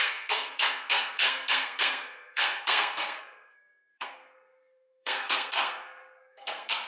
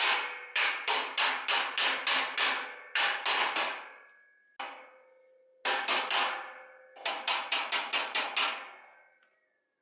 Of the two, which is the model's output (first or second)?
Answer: first